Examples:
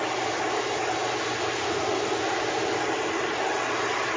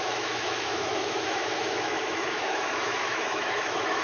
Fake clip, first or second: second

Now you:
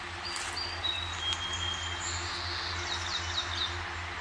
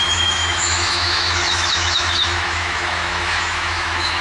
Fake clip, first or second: second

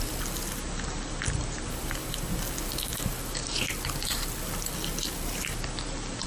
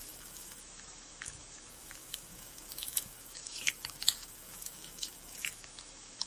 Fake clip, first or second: second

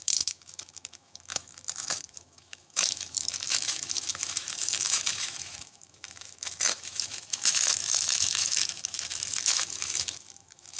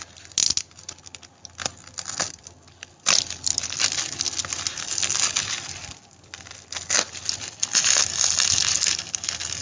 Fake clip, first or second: first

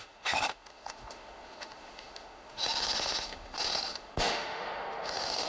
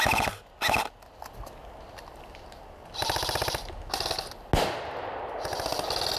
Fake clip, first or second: first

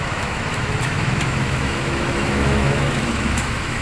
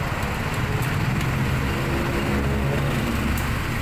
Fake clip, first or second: first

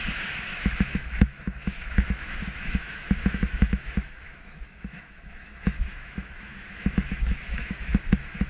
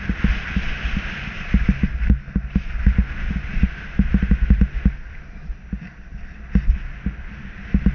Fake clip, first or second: first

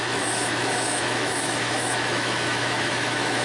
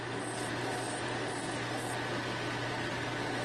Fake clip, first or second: first